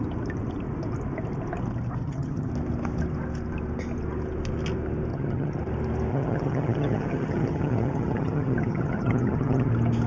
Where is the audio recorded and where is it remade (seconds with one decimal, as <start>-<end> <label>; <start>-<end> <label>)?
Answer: 0.0-2.0 recorded; 2.0-2.5 remade; 2.5-5.1 recorded; 5.1-5.6 remade; 5.6-6.1 recorded; 6.1-9.7 remade; 9.7-10.1 recorded